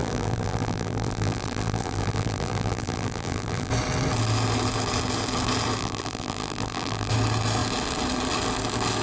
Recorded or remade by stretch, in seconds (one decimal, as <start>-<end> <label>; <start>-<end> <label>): 0.0-3.7 remade; 3.7-5.8 recorded; 5.8-7.1 remade; 7.1-9.0 recorded